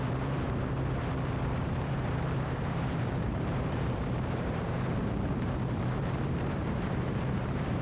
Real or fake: fake